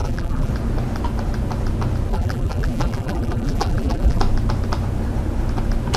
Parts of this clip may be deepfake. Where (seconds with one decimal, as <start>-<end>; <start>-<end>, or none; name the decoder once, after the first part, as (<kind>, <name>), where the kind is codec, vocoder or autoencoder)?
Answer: 0.0-0.5 (vocoder, BigVGAN v2); 2.1-4.2